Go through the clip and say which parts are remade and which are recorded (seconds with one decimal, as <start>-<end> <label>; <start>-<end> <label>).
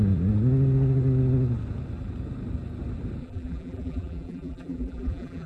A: 0.0-3.2 recorded; 3.2-5.5 remade